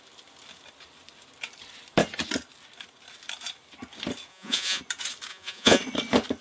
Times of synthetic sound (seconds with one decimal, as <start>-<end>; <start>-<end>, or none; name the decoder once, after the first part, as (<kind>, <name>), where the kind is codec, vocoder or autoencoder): 4.3-4.8 (vocoder, Vocos); 5.3-5.8